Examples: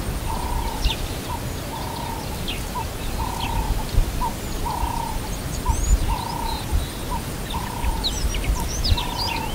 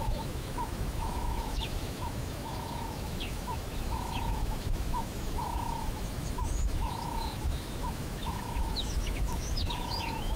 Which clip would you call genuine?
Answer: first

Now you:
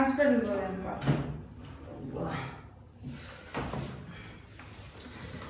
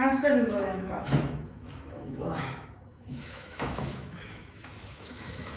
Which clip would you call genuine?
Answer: first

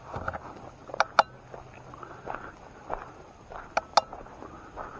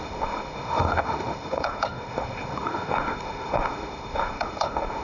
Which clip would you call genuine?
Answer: first